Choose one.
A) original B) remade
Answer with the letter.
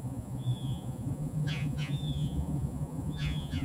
B